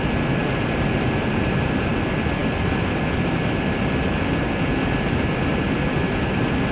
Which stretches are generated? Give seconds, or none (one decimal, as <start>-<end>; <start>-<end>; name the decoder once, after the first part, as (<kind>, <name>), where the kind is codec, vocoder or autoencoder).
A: 0.4-1.9 (vocoder, BigVGAN v2)